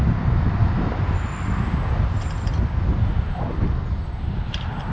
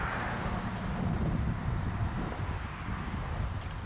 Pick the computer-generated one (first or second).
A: second